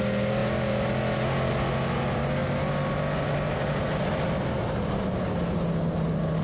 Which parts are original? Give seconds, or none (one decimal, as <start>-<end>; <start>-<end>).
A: 0.0-6.4